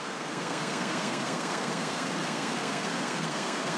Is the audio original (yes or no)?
no